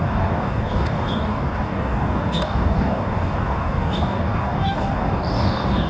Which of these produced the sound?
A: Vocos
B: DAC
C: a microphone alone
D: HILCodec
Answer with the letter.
B